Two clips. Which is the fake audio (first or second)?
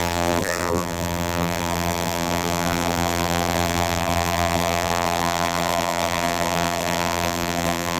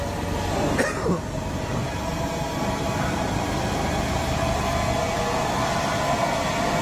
first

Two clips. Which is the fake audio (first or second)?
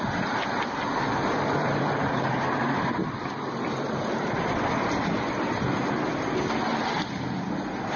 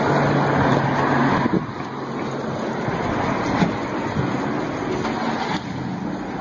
first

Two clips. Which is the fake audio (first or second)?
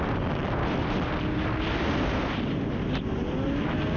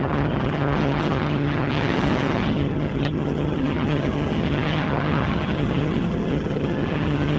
second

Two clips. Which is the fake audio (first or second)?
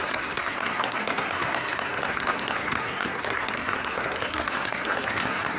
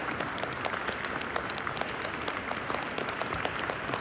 first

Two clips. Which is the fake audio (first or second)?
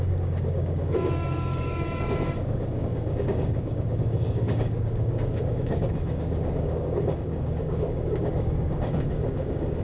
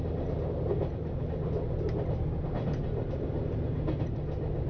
first